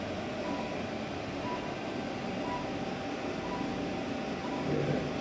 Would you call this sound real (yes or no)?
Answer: yes